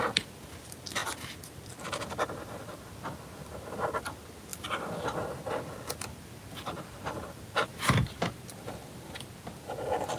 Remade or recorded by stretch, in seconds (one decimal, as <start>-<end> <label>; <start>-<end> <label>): 0.0-4.5 recorded; 4.5-5.6 remade; 5.6-7.7 recorded; 7.7-9.2 remade; 9.2-10.2 recorded